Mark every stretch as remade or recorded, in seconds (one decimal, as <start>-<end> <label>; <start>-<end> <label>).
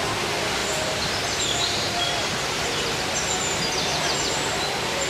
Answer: 0.0-0.6 recorded; 0.6-3.7 remade; 3.7-5.1 recorded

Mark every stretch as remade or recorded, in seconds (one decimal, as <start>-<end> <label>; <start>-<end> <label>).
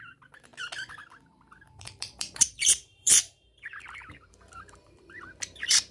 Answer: 0.0-0.5 remade; 0.5-1.3 recorded; 1.3-5.9 remade